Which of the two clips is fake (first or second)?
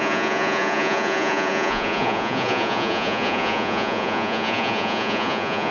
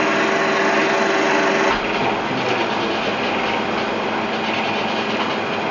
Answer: first